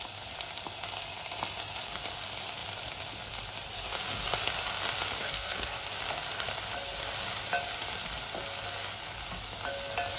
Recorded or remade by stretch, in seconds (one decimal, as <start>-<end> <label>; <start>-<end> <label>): 0.0-5.2 recorded; 5.2-5.9 remade; 5.9-10.2 recorded